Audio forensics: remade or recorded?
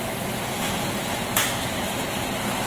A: recorded